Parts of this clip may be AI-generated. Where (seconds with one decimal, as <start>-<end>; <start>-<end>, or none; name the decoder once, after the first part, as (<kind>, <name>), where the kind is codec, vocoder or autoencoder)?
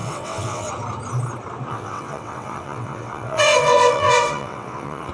0.0-0.7 (vocoder, WaveNeXt); 1.7-5.1